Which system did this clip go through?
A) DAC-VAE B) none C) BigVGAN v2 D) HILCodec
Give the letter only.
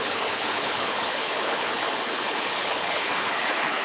D